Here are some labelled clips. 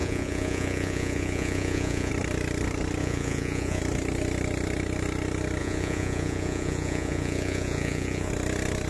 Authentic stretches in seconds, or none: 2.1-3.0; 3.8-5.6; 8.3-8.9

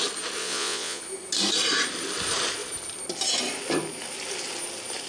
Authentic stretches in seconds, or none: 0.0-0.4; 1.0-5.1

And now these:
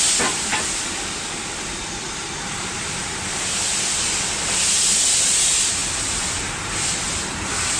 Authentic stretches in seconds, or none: 0.0-7.8

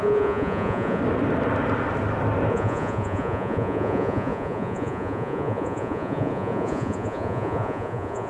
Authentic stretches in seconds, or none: 1.0-2.5